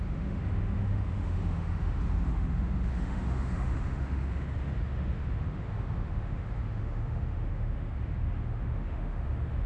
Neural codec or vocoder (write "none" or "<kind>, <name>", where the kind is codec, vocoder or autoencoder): autoencoder, DAC-VAE